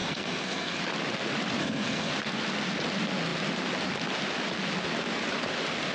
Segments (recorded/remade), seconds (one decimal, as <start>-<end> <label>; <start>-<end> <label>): 0.0-0.8 remade; 0.8-1.6 recorded; 1.6-2.1 remade; 2.1-5.9 recorded